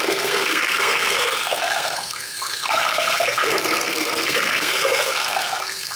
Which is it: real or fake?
fake